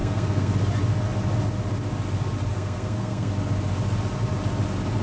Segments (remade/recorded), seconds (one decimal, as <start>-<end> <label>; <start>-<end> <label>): 0.0-0.5 remade; 0.5-2.5 recorded; 2.5-3.3 remade; 3.3-5.0 recorded